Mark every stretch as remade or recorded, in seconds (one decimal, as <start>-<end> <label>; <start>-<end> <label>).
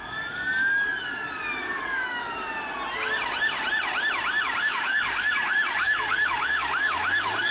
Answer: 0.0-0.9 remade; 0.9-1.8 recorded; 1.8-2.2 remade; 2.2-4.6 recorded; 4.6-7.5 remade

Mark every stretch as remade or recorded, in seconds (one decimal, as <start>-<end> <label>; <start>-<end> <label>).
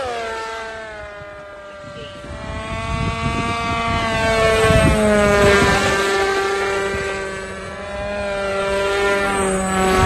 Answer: 0.0-10.1 recorded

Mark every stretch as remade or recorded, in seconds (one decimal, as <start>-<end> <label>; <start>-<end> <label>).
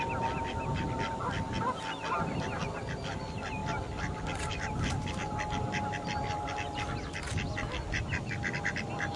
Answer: 0.0-9.2 recorded